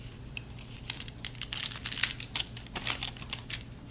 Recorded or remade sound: recorded